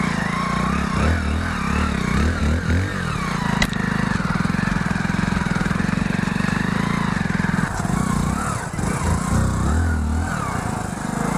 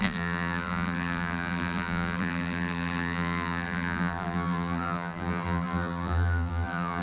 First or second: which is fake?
second